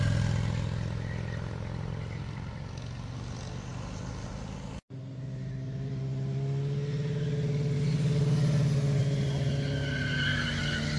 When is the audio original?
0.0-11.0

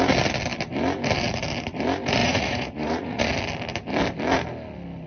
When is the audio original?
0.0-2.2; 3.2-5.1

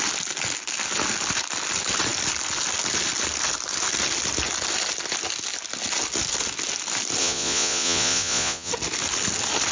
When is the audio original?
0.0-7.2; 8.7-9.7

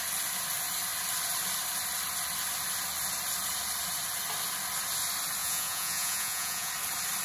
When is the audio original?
0.0-5.4; 6.7-7.2

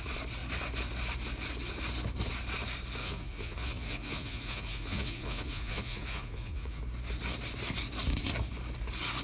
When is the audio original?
0.0-3.0; 6.8-9.2

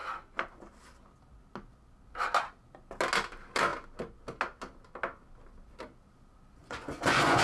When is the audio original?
0.0-6.6